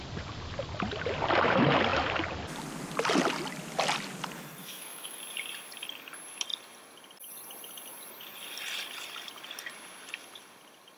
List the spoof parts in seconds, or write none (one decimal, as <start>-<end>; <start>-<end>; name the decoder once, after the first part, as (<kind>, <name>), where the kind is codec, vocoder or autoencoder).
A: 4.6-5.2 (autoencoder, DAC-VAE)